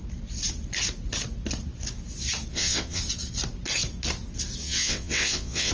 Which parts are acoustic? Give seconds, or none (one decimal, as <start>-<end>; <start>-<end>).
0.0-2.5; 3.0-4.6